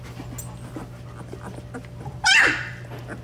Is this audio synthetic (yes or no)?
no